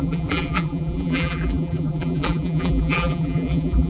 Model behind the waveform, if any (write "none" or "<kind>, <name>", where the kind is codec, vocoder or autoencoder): vocoder, BigVGAN v2